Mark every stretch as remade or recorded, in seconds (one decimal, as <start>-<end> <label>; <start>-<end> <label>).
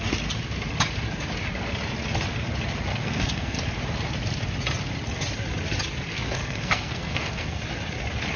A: 0.0-2.9 recorded; 2.9-3.6 remade; 3.6-6.1 recorded; 6.1-7.6 remade; 7.6-8.4 recorded